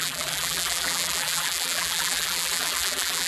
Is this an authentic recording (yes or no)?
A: no